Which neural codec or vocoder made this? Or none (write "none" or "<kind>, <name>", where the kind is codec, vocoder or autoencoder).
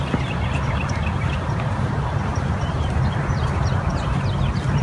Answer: vocoder, BigVGAN v2